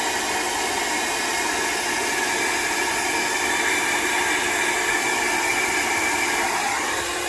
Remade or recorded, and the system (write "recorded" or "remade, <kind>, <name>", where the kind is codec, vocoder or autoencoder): remade, vocoder, BigVGAN v2